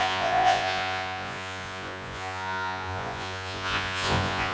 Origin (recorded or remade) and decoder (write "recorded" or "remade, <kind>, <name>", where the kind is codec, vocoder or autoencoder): remade, vocoder, Vocos